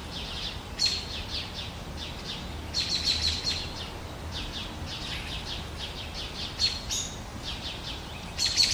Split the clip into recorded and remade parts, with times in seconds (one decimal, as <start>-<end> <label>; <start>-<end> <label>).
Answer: 0.0-7.3 recorded; 7.3-8.7 remade